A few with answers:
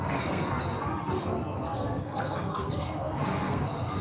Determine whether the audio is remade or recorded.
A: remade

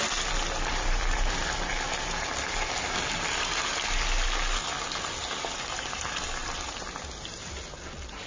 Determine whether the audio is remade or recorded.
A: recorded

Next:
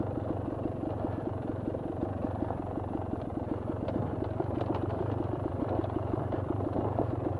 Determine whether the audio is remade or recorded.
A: remade